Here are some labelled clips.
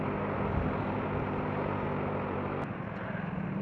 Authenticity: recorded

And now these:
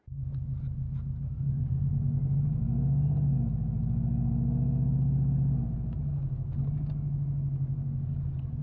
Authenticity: recorded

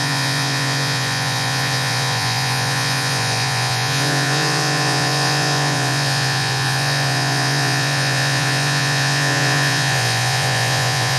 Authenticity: remade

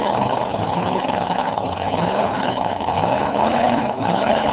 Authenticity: remade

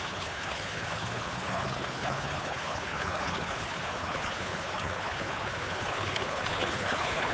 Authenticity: remade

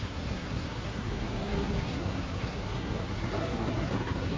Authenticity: remade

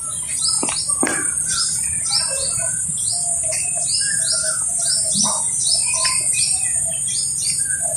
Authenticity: recorded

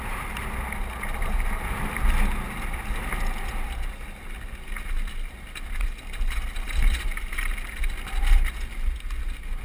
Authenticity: recorded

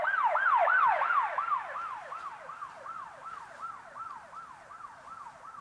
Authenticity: recorded